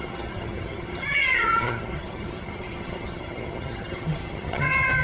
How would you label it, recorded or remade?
remade